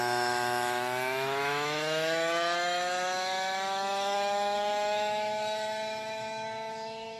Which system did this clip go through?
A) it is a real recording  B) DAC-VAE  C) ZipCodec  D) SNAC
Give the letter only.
B